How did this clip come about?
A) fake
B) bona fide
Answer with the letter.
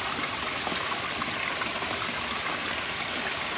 B